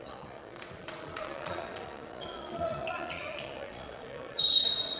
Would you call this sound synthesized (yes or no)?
yes